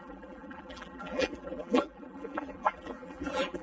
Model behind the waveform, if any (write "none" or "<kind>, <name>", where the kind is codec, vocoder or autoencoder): vocoder, BigVGAN v2